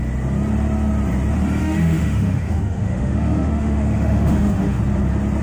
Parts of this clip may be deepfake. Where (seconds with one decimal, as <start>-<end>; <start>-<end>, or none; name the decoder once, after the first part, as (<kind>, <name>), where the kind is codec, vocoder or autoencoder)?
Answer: 1.6-4.8 (autoencoder, DAC-VAE)